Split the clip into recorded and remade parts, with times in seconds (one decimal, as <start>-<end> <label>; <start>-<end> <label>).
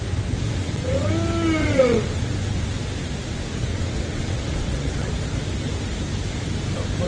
0.0-0.6 recorded; 0.6-1.1 remade; 1.1-1.6 recorded; 1.6-2.2 remade; 2.2-3.7 recorded; 3.7-5.1 remade; 5.1-7.1 recorded